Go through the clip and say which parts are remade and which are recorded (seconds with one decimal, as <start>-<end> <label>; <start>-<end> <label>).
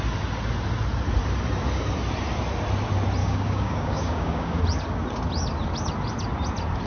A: 0.0-3.2 recorded; 3.2-4.6 remade; 4.6-6.9 recorded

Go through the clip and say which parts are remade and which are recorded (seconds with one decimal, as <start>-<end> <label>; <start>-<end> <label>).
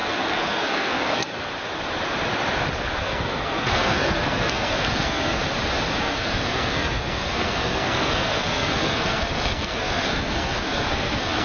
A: 0.0-1.5 remade; 1.5-3.0 recorded; 3.0-5.4 remade; 5.4-6.0 recorded; 6.0-11.4 remade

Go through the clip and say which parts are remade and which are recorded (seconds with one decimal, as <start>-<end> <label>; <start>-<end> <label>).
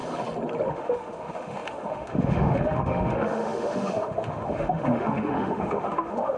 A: 0.0-0.7 recorded; 0.7-6.4 remade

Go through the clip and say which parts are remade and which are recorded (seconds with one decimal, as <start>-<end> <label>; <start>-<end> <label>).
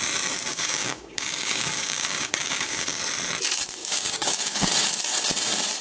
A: 0.0-0.5 recorded; 0.5-3.0 remade; 3.0-3.8 recorded; 3.8-4.7 remade; 4.7-5.8 recorded